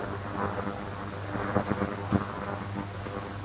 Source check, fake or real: real